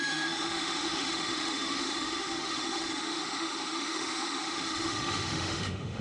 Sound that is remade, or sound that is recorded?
remade